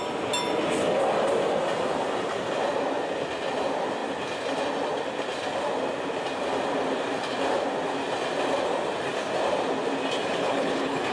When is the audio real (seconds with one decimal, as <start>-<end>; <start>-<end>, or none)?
0.0-10.3

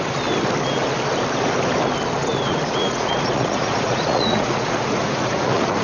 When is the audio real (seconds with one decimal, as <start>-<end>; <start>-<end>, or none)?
0.0-2.3

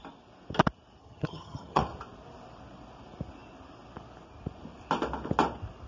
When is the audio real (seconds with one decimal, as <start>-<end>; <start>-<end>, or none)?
0.0-1.0; 1.8-5.9

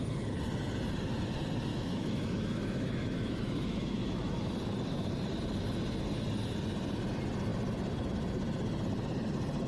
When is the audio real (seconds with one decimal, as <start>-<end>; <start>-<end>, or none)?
0.0-1.7; 4.5-9.7

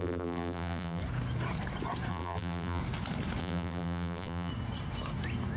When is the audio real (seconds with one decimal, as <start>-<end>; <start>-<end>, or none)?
1.0-2.1; 2.8-3.4; 4.5-5.6

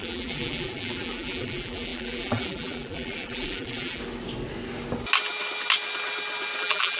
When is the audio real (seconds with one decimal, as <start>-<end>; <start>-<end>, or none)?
4.0-6.6

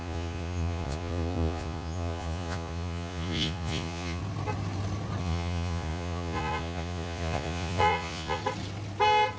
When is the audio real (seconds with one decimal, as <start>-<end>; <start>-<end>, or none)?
4.2-5.2; 8.4-9.4

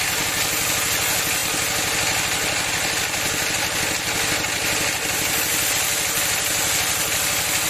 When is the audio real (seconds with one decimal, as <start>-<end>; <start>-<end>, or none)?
0.0-7.7